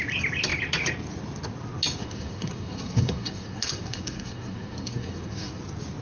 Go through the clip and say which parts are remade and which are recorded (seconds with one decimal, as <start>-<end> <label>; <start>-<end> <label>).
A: 0.0-2.0 recorded; 2.0-5.6 remade; 5.6-6.0 recorded